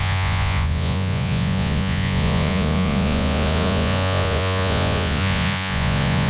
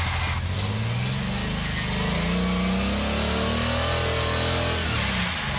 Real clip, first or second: second